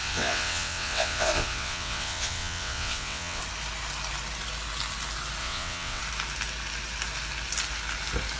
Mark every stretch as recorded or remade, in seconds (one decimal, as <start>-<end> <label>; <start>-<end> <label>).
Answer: 0.0-3.4 remade; 3.4-5.4 recorded; 5.4-6.0 remade; 6.0-8.4 recorded